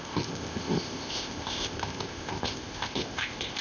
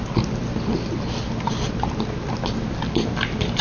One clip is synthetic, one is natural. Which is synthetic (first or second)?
first